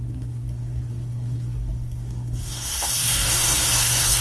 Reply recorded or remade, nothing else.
remade